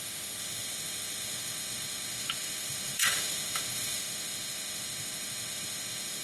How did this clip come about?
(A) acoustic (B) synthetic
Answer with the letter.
B